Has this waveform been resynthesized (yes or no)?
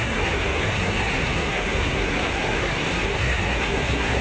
yes